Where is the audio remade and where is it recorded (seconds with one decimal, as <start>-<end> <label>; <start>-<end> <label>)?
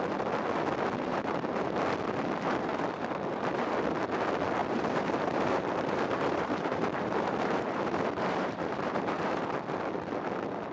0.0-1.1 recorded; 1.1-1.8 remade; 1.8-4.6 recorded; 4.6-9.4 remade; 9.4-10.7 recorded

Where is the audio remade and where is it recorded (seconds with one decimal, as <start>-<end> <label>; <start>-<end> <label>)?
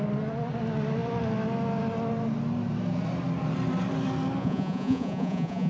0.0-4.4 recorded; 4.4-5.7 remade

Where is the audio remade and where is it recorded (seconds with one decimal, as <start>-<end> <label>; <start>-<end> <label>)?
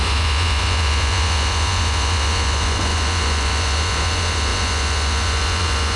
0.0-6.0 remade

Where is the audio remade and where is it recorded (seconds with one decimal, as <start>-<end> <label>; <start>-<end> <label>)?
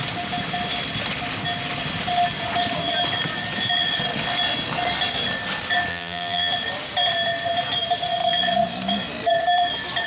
0.0-5.9 recorded; 5.9-6.5 remade; 6.5-10.1 recorded